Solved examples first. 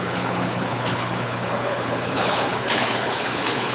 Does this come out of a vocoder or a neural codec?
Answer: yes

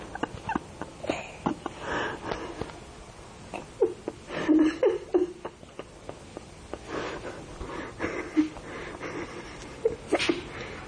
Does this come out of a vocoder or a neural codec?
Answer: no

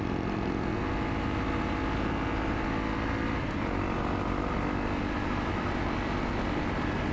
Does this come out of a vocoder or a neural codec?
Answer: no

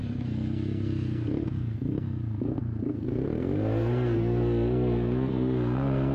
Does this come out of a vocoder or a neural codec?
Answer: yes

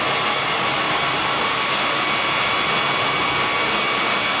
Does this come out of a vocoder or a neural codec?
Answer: no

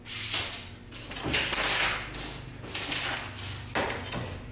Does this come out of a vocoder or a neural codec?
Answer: no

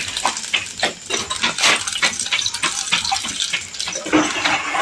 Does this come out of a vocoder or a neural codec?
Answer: no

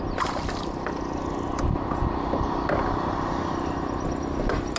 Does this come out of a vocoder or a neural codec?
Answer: no